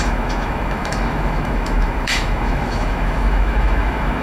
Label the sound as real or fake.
fake